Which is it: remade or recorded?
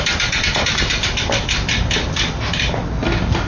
recorded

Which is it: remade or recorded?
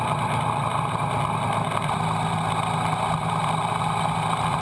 recorded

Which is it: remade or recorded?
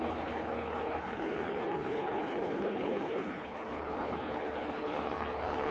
remade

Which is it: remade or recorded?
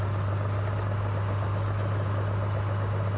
recorded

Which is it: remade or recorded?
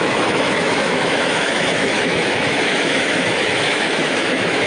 remade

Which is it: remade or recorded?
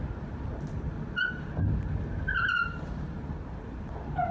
recorded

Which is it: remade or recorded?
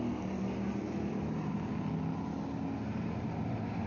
recorded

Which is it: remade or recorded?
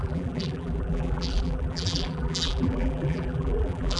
remade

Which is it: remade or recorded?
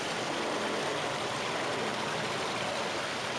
recorded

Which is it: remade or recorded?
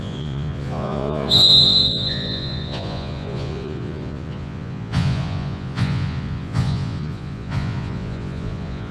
remade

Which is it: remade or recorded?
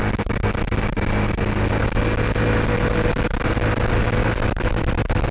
recorded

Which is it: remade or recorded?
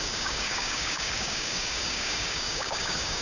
remade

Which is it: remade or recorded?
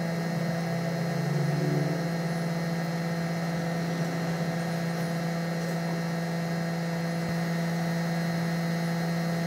recorded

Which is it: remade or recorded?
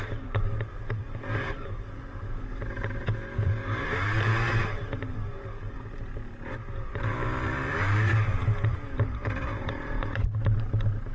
remade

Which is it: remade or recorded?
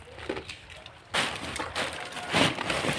recorded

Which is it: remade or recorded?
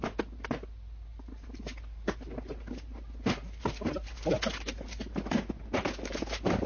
recorded